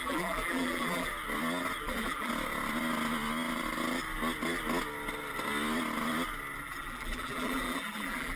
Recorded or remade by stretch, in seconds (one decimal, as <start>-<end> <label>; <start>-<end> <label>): 0.0-1.1 remade; 1.1-1.8 recorded; 1.8-2.3 remade; 2.3-6.6 recorded; 6.6-8.4 remade